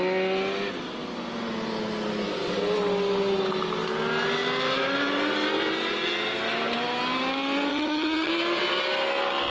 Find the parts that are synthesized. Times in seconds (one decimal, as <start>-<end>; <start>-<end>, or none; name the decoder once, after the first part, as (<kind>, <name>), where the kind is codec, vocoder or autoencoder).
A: 7.7-8.3 (vocoder, HiFi-GAN)